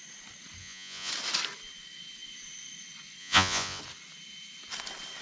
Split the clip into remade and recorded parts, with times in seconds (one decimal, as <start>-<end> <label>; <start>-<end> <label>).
0.0-0.6 recorded; 0.6-1.1 remade; 1.1-3.2 recorded; 3.2-3.8 remade; 3.8-5.2 recorded